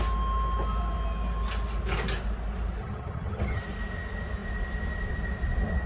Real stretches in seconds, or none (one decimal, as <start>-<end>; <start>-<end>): 0.0-2.8; 3.6-5.9